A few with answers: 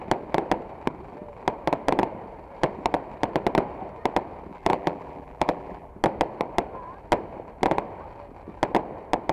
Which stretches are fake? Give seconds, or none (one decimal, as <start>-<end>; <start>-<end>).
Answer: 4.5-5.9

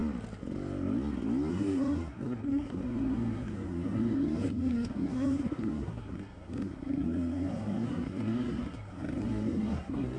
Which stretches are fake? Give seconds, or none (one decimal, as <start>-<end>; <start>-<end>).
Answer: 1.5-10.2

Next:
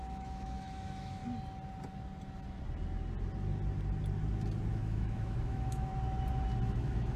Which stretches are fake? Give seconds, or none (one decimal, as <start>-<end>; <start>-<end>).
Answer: 0.0-1.2; 4.7-5.9; 6.7-7.2

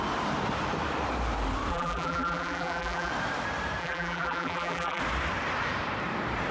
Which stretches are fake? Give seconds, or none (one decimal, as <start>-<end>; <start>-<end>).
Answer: 1.7-3.1; 3.8-5.0

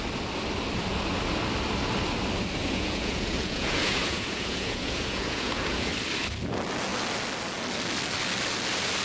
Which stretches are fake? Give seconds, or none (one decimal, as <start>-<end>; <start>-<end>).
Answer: 2.6-5.9